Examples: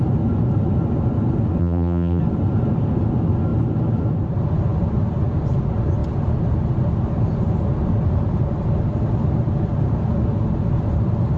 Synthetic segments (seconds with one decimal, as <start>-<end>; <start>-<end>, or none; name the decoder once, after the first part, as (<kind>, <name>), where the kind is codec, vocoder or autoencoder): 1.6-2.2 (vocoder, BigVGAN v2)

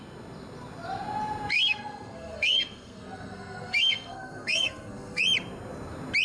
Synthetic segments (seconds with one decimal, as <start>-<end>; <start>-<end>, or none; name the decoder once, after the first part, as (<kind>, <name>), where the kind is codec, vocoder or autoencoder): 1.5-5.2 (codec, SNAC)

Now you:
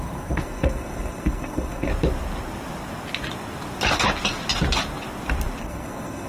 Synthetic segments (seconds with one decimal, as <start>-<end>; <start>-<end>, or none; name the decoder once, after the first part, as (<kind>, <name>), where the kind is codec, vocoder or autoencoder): 0.0-1.9 (codec, SNAC); 5.6-6.3

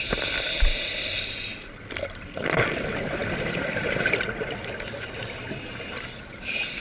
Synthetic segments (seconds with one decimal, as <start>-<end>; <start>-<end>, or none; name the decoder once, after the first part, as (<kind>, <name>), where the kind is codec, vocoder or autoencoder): none